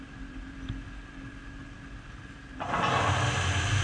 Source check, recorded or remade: recorded